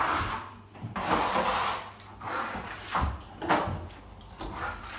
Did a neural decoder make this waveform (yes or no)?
no